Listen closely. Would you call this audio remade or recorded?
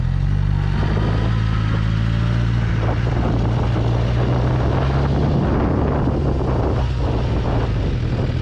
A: recorded